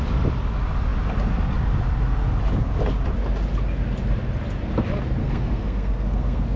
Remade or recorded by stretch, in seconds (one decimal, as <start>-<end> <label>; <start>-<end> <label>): 0.0-5.2 recorded; 5.2-6.6 remade